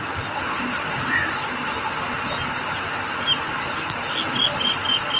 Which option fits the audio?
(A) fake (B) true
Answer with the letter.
B